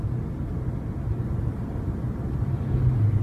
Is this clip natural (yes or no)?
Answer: yes